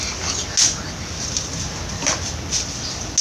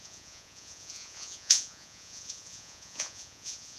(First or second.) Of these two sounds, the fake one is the second